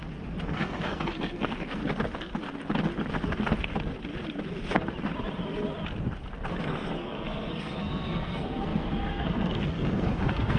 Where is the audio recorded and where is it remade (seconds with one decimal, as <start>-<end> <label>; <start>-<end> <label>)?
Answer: 0.0-0.5 recorded; 0.5-1.8 remade; 1.8-6.5 recorded; 6.5-10.6 remade